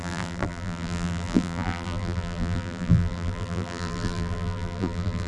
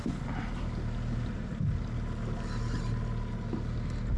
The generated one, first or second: first